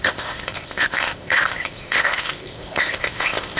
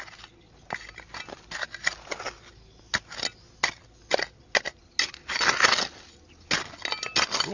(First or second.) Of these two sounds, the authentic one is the second